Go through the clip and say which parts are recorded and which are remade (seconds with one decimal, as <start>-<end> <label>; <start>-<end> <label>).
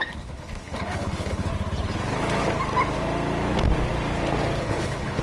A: 0.0-1.5 remade; 1.5-4.6 recorded; 4.6-5.2 remade